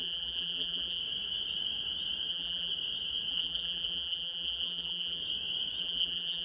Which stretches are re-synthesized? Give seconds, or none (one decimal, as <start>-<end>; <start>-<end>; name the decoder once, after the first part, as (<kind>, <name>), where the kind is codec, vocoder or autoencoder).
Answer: 0.0-1.0 (vocoder, BigVGAN v2); 2.3-2.7; 3.3-5.2; 5.8-6.4